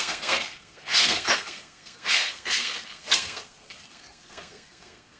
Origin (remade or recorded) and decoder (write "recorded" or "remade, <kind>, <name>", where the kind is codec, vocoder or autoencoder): remade, codec, SNAC